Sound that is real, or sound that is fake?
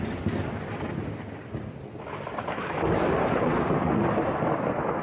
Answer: real